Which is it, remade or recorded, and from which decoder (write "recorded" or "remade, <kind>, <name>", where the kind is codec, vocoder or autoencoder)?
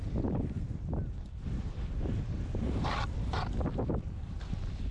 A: recorded